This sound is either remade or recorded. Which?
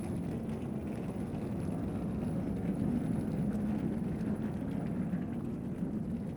recorded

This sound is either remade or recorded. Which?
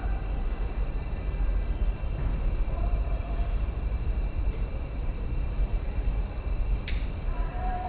remade